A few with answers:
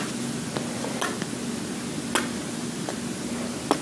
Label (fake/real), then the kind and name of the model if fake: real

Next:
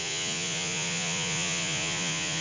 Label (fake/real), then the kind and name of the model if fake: fake, vocoder, Vocos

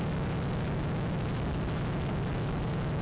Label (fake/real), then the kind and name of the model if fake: real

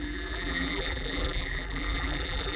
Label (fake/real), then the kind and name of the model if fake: fake, vocoder, BigVGAN v2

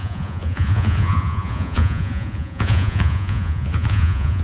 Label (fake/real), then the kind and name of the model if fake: fake, vocoder, Vocos